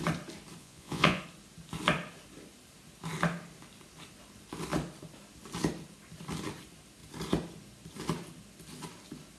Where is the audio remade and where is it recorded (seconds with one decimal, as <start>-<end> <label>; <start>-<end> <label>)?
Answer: 0.0-0.6 recorded; 0.6-1.2 remade; 1.2-9.4 recorded